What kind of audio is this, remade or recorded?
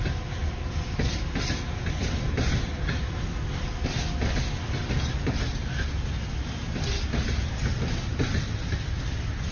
recorded